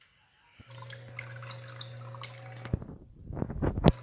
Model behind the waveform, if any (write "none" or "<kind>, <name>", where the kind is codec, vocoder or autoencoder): none